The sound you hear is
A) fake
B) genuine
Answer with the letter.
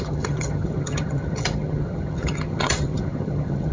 A